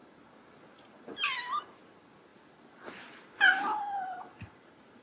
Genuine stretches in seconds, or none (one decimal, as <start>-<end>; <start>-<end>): 0.0-5.0